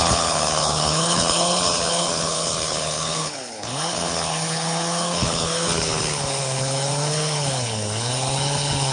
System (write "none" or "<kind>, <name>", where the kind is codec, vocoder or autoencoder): codec, HILCodec